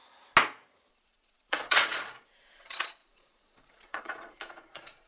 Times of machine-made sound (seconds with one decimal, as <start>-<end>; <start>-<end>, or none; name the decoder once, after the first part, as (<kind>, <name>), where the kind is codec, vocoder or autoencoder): 0.9-5.1 (vocoder, Vocos)

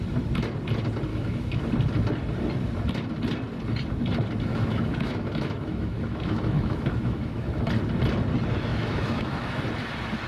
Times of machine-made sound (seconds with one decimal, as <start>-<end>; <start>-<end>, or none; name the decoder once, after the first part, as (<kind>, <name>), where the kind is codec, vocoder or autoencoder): 1.1-1.6 (autoencoder, DAC-VAE); 4.5-7.6; 8.7-9.6

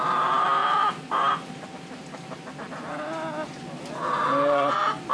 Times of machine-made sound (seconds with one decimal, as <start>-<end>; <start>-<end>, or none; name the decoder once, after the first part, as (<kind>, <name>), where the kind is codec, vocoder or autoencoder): none

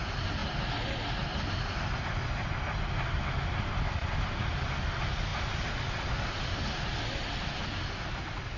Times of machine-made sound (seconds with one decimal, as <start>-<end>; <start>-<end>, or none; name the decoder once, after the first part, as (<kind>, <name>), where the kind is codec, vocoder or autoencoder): none